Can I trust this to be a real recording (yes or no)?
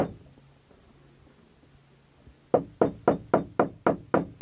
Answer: yes